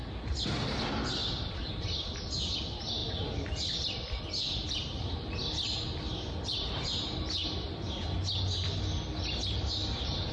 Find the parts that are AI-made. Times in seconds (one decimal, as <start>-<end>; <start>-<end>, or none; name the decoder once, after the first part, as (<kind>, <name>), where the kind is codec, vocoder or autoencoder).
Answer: none